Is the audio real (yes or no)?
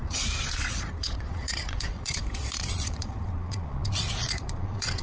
no